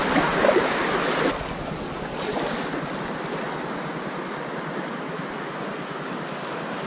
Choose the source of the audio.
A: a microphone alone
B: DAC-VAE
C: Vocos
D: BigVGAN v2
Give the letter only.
A